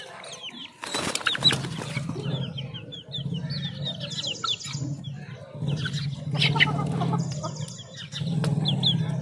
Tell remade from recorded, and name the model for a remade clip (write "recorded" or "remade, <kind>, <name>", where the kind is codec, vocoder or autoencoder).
recorded